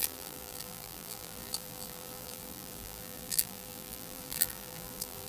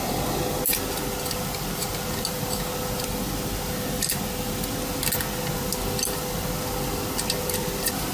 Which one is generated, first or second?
first